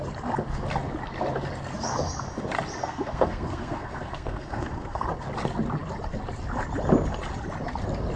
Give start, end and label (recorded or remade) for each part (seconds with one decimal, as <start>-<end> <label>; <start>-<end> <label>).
0.0-2.8 recorded; 2.8-5.0 remade; 5.0-8.2 recorded